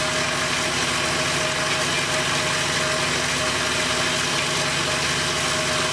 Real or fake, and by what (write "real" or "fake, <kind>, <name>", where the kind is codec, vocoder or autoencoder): real